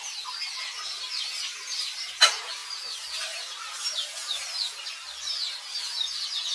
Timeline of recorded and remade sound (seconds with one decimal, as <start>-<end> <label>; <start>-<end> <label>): 0.0-2.6 remade; 2.6-6.5 recorded